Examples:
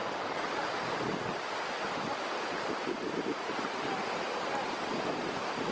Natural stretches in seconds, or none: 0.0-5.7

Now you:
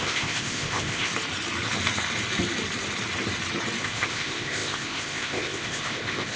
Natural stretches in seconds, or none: 1.1-3.8

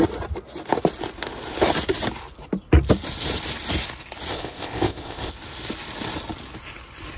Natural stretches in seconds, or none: 0.0-4.3; 5.3-7.2

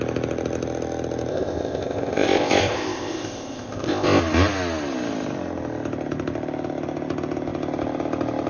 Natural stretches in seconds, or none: 0.0-1.3; 4.2-8.5

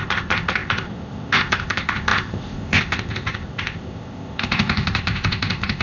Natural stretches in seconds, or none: none

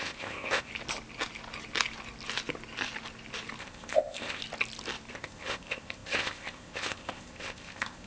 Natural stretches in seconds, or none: 0.7-3.6; 4.4-5.1